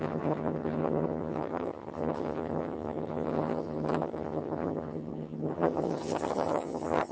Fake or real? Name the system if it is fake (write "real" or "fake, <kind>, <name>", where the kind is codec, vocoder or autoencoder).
fake, vocoder, HiFi-GAN